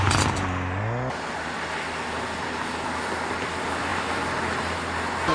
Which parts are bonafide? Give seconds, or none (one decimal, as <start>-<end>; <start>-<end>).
0.0-5.3